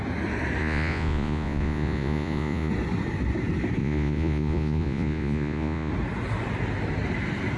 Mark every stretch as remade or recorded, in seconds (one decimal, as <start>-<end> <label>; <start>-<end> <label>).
0.0-0.6 recorded; 0.6-2.7 remade; 2.7-3.8 recorded; 3.8-5.9 remade; 5.9-7.6 recorded